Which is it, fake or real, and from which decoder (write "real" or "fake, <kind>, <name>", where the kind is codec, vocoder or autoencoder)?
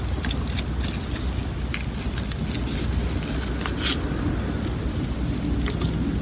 real